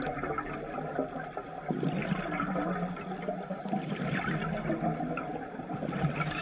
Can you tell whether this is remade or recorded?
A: recorded